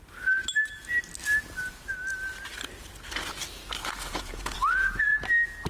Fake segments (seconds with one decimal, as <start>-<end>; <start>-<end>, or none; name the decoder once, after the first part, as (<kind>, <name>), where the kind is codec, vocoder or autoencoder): 3.8-5.2 (vocoder, Vocos)